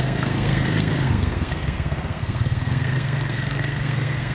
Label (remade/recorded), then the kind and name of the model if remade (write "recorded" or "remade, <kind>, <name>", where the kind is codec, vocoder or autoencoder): remade, codec, SNAC